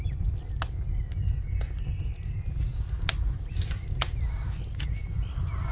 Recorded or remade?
recorded